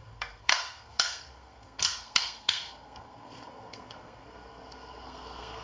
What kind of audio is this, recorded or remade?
remade